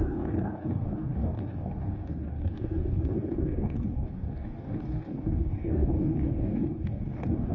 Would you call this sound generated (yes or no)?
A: yes